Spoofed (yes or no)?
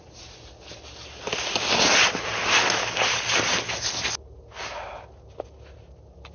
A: no